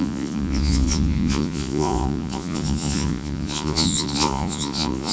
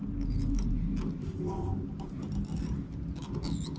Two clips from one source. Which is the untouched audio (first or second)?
second